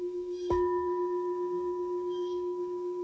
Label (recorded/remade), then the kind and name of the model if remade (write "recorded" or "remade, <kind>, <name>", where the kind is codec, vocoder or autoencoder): remade, codec, SNAC